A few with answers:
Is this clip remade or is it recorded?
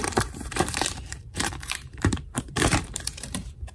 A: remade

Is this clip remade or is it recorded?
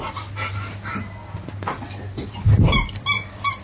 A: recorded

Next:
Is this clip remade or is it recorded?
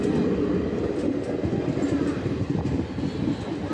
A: recorded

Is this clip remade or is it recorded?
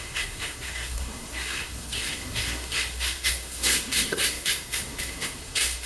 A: remade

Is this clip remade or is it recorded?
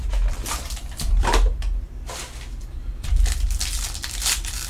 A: remade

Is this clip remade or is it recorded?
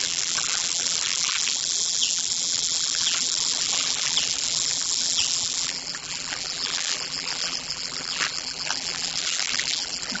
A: remade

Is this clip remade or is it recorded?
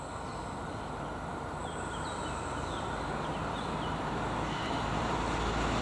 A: recorded